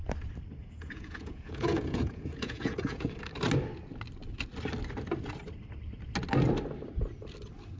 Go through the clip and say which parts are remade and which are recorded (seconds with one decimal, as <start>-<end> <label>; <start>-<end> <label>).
0.0-0.6 recorded; 0.6-3.1 remade; 3.1-7.8 recorded